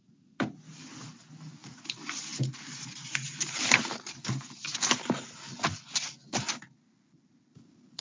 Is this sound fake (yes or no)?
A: no